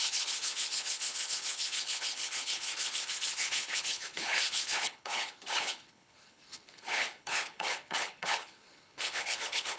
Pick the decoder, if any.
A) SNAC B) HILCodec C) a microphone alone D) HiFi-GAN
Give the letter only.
B